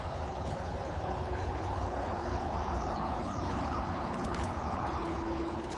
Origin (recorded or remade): remade